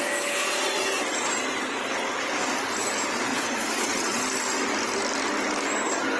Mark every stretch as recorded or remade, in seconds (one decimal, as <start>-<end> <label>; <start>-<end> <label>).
0.0-0.4 recorded; 0.4-1.0 remade; 1.0-3.3 recorded; 3.3-4.2 remade; 4.2-6.2 recorded